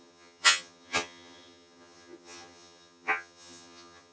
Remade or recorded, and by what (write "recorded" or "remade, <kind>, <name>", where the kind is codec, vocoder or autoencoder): remade, vocoder, HiFi-GAN